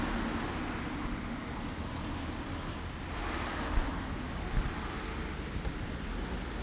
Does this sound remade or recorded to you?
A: recorded